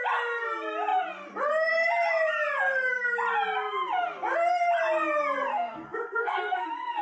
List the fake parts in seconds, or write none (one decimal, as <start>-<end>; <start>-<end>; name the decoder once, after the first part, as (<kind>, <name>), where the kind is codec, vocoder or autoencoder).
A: 5.5-7.0 (codec, SNAC)